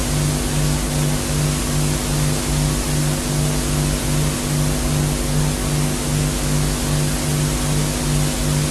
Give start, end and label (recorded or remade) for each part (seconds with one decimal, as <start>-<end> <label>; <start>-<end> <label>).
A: 0.0-8.7 recorded